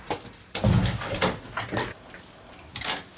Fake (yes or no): no